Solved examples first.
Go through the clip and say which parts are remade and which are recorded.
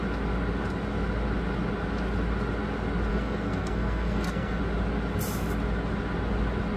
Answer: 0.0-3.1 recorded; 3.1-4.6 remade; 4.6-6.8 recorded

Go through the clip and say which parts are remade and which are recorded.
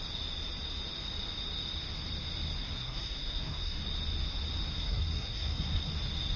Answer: 0.0-2.6 recorded; 2.6-3.8 remade; 3.8-4.7 recorded; 4.7-5.9 remade; 5.9-6.4 recorded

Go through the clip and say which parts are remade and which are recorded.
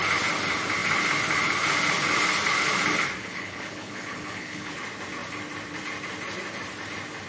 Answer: 0.0-3.2 recorded; 3.2-4.7 remade; 4.7-7.3 recorded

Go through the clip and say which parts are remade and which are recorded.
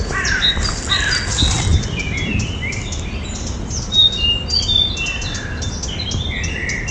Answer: 0.0-6.9 recorded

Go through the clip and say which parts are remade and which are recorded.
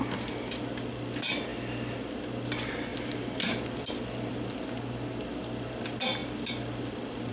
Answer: 0.0-7.3 recorded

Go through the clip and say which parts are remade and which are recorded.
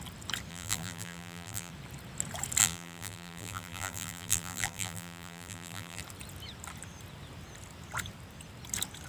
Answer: 0.0-0.5 recorded; 0.5-1.7 remade; 1.7-2.6 recorded; 2.6-6.0 remade; 6.0-9.1 recorded